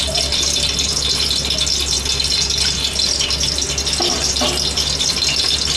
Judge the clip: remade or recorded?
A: recorded